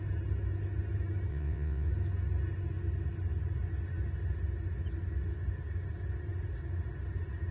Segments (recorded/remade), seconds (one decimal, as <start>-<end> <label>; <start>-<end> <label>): 0.0-1.3 recorded; 1.3-1.9 remade; 1.9-7.5 recorded